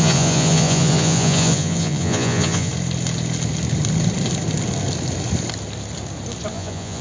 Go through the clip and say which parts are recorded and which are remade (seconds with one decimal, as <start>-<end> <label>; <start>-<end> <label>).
0.0-2.7 remade; 2.7-6.5 recorded; 6.5-7.0 remade